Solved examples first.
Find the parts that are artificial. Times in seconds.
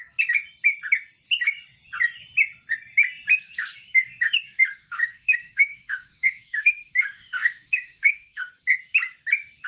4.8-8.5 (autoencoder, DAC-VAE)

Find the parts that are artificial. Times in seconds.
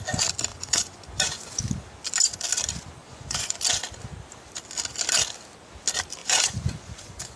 0.5-1.6 (vocoder, Vocos); 3.0-3.6; 6.2-7.4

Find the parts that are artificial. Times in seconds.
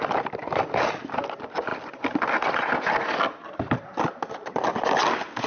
none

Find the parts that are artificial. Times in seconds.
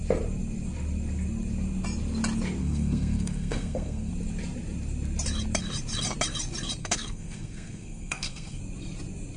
2.6-4.1 (codec, SNAC); 6.8-8.6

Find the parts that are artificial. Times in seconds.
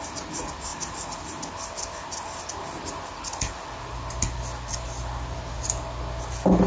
none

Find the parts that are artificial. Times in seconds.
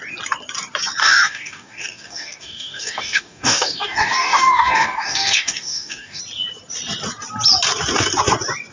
1.0-6.2 (codec, DAC)